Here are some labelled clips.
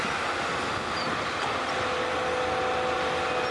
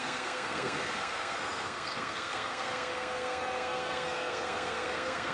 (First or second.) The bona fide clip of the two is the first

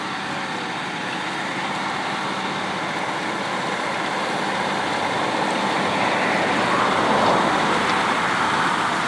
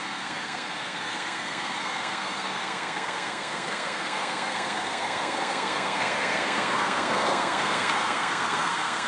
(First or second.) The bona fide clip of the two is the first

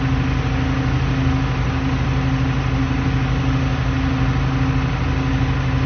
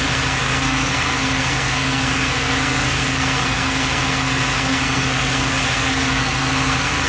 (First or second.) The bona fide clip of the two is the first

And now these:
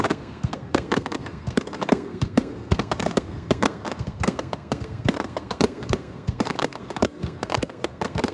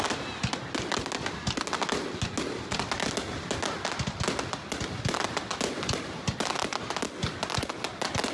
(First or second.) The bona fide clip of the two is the second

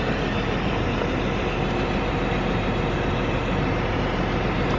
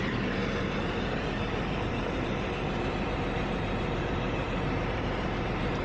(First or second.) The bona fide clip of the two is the first